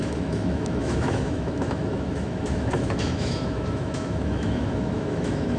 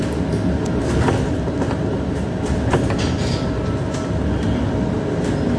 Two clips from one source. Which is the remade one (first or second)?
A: first